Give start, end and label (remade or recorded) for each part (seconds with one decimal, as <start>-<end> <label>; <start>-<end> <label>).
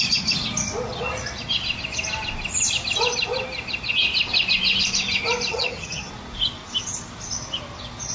0.0-5.5 recorded; 5.5-6.1 remade; 6.1-8.1 recorded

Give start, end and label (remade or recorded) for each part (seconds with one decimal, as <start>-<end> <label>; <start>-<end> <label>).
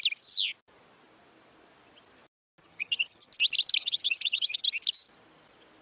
0.0-2.6 recorded; 2.6-3.3 remade; 3.3-3.8 recorded; 3.8-4.6 remade; 4.6-5.8 recorded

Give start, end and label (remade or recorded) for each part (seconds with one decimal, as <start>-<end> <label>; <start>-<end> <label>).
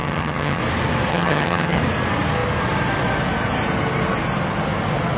0.0-0.6 remade; 0.6-1.1 recorded; 1.1-1.8 remade; 1.8-5.2 recorded